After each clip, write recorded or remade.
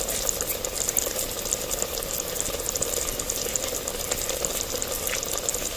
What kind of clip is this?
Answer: recorded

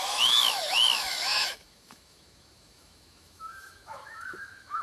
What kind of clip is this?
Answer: remade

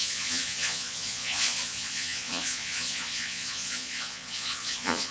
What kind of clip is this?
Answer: remade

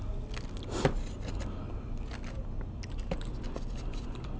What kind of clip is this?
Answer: recorded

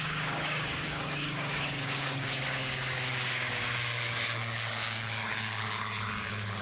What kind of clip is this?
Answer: remade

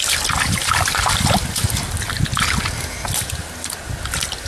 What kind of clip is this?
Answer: recorded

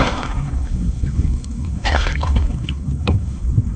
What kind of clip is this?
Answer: remade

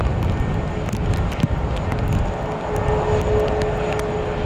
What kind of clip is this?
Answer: recorded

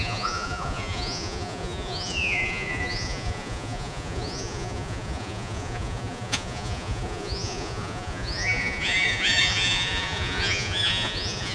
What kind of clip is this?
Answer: remade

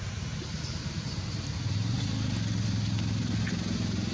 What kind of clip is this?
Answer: recorded